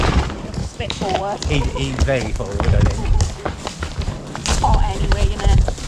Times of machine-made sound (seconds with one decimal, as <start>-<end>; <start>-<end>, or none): 0.6-1.2